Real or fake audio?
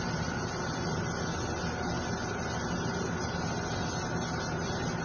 real